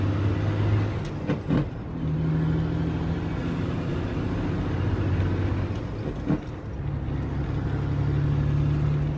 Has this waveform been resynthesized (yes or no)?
no